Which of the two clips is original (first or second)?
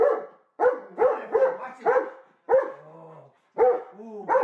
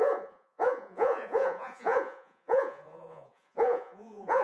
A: first